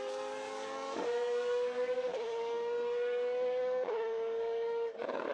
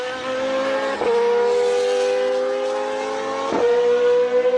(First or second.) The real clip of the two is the second